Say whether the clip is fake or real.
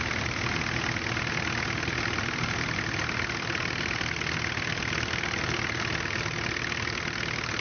real